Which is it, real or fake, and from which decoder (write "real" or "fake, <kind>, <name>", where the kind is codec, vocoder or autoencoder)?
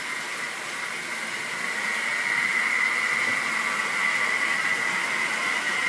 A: real